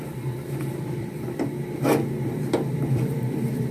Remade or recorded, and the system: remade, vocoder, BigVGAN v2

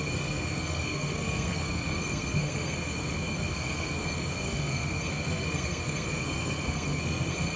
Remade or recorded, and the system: remade, codec, SNAC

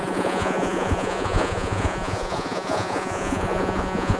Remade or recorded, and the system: remade, vocoder, Vocos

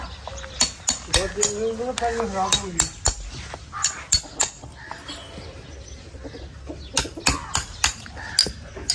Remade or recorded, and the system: recorded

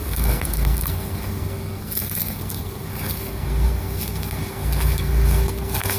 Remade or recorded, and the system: remade, codec, SNAC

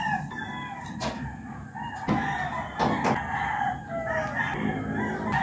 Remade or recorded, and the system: recorded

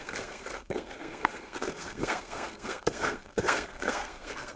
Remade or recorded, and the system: remade, codec, SNAC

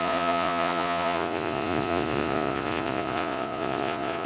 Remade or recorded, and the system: remade, vocoder, Vocos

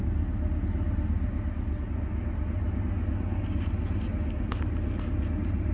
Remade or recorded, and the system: recorded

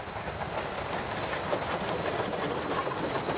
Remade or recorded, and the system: recorded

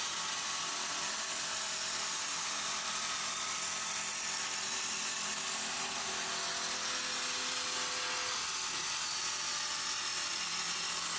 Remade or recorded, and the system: recorded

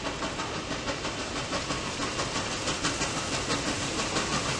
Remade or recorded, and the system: recorded